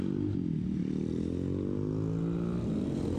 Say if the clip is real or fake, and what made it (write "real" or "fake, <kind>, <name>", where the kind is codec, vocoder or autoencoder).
real